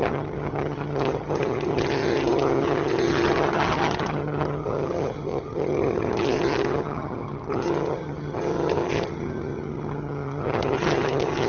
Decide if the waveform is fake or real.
fake